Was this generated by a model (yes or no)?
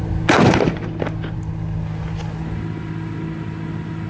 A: no